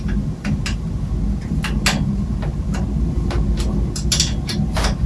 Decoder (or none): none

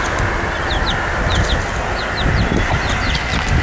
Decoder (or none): none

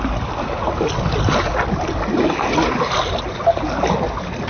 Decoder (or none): none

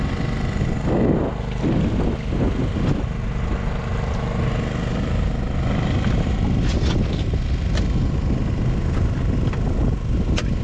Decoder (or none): none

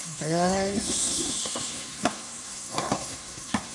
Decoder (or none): codec, SNAC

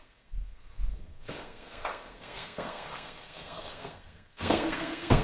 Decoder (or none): codec, SNAC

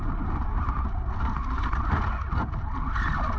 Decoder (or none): none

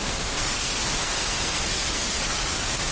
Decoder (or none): codec, SNAC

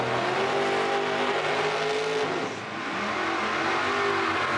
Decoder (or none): none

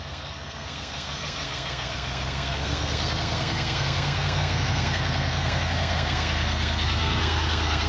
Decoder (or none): codec, SNAC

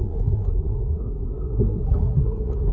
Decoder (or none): codec, SNAC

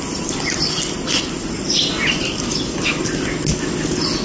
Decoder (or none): none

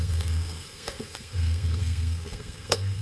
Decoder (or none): codec, SNAC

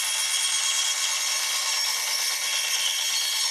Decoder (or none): none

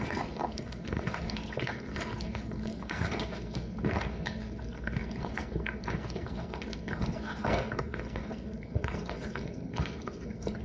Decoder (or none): codec, SNAC